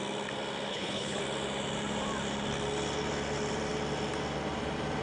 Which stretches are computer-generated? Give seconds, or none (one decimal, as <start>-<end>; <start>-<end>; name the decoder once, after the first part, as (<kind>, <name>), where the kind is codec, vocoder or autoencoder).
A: 0.7-1.2 (codec, HILCodec)